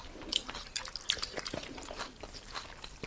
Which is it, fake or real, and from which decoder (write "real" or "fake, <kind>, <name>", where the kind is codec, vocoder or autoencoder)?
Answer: real